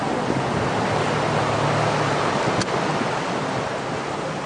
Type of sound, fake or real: real